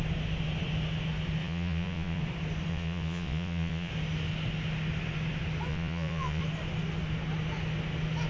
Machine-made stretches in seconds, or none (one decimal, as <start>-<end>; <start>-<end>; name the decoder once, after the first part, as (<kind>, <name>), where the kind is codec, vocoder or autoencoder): 1.4-2.2 (vocoder, Vocos); 2.7-3.9; 5.7-6.4